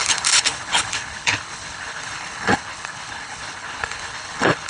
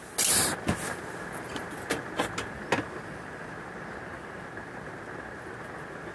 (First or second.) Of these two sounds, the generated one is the first